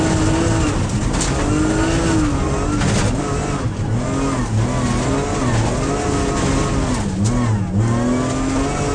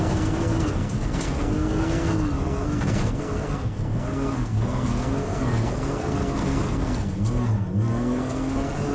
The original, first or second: first